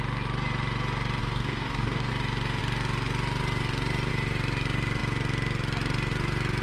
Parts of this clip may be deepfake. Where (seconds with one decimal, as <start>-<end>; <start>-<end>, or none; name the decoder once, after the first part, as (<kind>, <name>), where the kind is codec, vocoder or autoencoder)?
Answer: 1.2-2.1 (codec, DAC)